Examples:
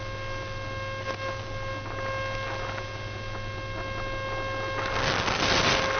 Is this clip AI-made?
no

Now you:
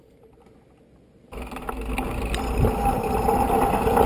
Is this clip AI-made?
no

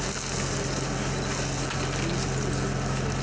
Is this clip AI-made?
no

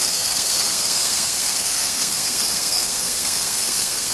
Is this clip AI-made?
yes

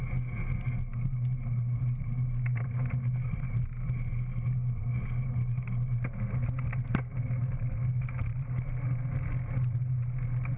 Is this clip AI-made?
no